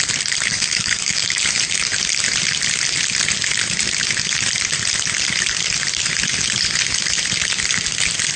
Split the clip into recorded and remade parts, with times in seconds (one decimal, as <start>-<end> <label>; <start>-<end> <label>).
0.0-0.5 recorded; 0.5-1.4 remade; 1.4-8.4 recorded